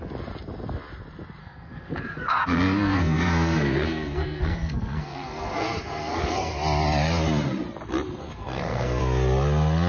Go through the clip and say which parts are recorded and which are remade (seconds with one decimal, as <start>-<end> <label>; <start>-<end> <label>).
0.0-1.4 recorded; 1.4-6.5 remade; 6.5-8.2 recorded; 8.2-9.0 remade; 9.0-9.9 recorded